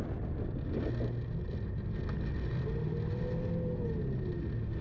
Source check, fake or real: real